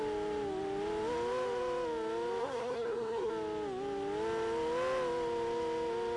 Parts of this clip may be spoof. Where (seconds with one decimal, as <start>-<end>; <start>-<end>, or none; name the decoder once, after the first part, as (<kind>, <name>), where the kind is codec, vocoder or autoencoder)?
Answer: 2.4-3.3 (codec, SNAC)